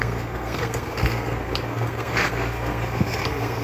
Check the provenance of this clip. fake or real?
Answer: fake